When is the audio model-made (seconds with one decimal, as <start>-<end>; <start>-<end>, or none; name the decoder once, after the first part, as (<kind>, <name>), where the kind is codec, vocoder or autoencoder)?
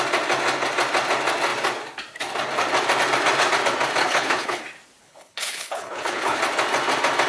4.0-4.6 (codec, HILCodec); 5.0-6.4